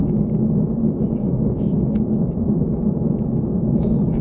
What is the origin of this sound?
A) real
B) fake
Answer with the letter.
B